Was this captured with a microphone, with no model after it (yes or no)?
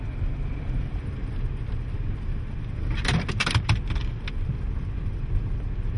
yes